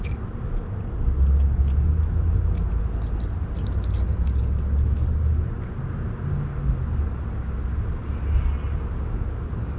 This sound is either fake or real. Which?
real